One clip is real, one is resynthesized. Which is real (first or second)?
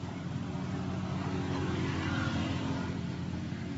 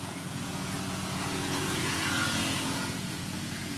first